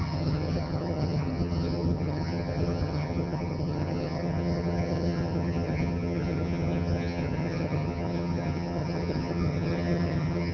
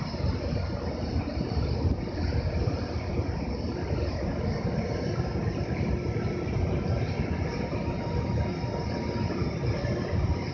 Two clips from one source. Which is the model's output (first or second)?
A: first